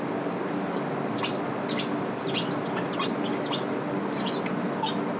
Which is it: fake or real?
real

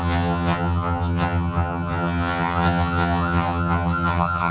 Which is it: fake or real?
fake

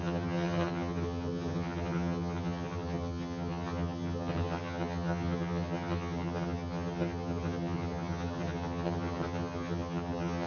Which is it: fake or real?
fake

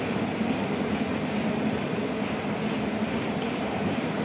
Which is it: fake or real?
real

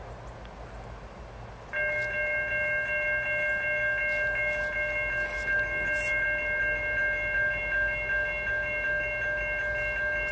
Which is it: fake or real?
real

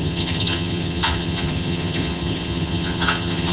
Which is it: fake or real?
fake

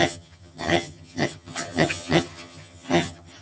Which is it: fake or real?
fake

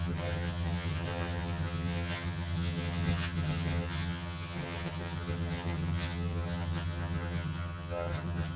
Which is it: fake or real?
fake